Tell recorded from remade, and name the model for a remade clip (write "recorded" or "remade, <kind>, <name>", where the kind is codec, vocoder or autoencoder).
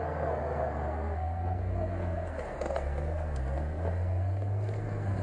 remade, codec, SNAC